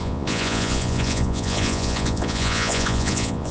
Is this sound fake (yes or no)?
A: yes